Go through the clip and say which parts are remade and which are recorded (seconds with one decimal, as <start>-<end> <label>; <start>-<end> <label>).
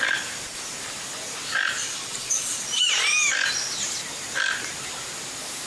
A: 0.0-1.8 recorded; 1.8-2.7 remade; 2.7-5.7 recorded